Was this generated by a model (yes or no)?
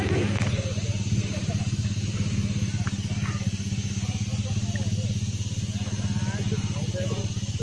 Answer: no